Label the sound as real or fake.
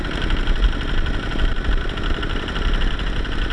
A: real